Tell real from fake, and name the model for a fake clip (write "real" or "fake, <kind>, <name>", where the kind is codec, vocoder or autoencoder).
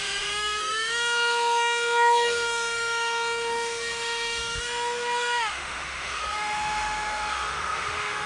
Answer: fake, autoencoder, DAC-VAE